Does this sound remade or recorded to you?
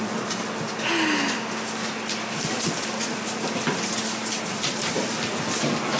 recorded